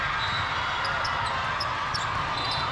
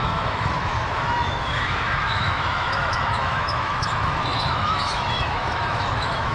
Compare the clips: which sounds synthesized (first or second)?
second